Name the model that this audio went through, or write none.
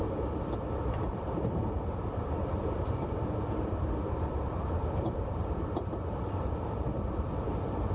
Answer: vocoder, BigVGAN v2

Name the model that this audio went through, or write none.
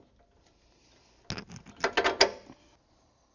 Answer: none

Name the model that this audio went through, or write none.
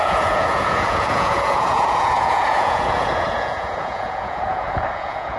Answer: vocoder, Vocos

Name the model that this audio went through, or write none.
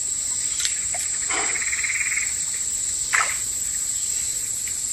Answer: none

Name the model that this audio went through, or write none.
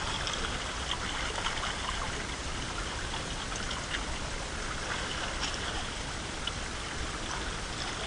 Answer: none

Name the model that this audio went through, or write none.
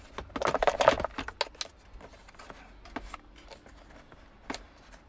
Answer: none